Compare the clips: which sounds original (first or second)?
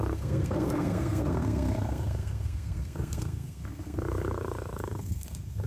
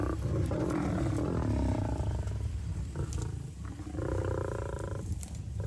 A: second